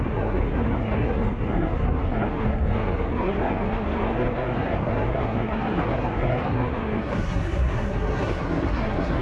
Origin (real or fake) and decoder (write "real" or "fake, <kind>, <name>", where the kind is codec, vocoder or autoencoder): fake, codec, SNAC